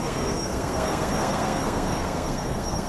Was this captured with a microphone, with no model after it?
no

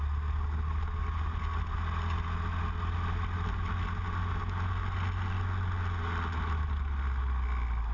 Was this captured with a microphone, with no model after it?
yes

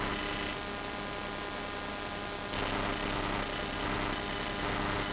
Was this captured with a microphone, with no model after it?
yes